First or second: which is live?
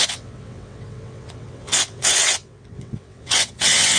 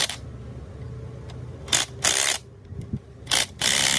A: second